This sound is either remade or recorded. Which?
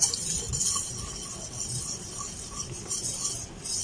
recorded